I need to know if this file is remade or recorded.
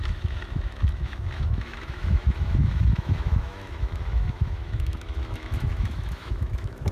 remade